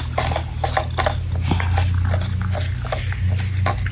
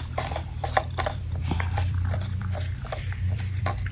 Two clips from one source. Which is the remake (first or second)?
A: second